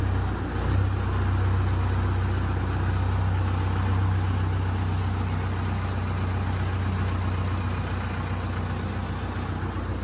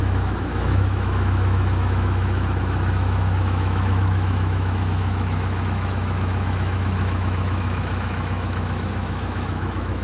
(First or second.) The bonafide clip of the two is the first